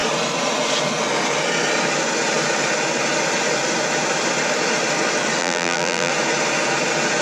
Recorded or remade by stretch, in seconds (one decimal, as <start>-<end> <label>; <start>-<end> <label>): 0.0-5.4 recorded; 5.4-6.1 remade; 6.1-7.2 recorded